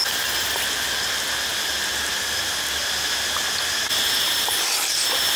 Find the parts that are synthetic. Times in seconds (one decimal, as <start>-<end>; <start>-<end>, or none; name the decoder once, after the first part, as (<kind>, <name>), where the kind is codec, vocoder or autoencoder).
none